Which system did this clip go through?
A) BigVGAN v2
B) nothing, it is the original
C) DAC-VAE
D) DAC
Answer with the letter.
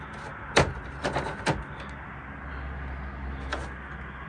B